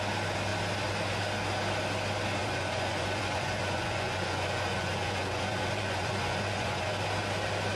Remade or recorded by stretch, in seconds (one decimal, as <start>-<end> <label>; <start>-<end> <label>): 0.0-2.4 recorded; 2.4-6.9 remade; 6.9-7.8 recorded

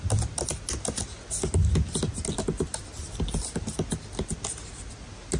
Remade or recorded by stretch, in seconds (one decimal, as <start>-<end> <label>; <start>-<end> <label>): 0.0-5.4 recorded

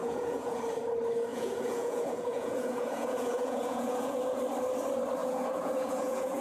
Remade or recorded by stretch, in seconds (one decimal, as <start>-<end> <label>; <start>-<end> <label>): 0.0-0.6 remade; 0.6-1.3 recorded; 1.3-4.4 remade; 4.4-5.2 recorded; 5.2-6.4 remade

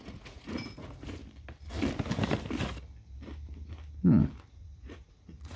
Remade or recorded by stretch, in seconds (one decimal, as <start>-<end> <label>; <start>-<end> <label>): 0.0-1.2 remade; 1.2-4.5 recorded; 4.5-5.6 remade

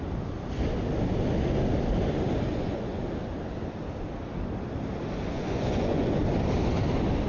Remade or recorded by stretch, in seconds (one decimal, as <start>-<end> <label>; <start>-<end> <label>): 0.0-2.5 recorded; 2.5-3.0 remade; 3.0-5.3 recorded; 5.3-6.2 remade; 6.2-7.3 recorded

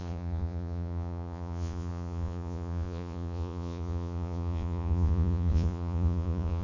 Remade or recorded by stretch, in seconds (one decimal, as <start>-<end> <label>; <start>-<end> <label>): 0.0-6.6 remade

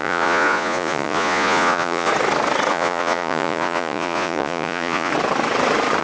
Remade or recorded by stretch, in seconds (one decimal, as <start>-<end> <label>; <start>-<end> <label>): 0.0-2.1 remade; 2.1-2.7 recorded; 2.7-5.1 remade; 5.1-6.0 recorded

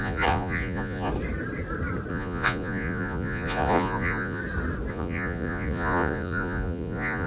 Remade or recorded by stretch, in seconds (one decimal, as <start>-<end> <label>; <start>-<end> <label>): 0.0-1.1 remade; 1.1-2.1 recorded; 2.1-4.4 remade; 4.4-4.9 recorded; 4.9-7.3 remade